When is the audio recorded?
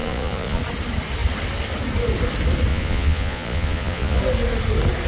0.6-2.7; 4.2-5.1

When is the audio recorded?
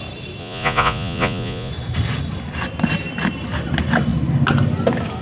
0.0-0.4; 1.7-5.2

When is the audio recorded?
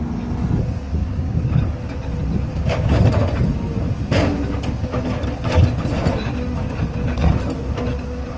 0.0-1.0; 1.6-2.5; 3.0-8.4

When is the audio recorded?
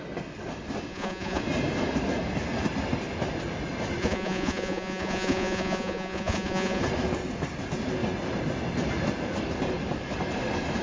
0.0-0.9; 1.4-4.0; 6.8-10.8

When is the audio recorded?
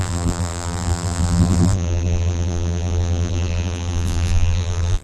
none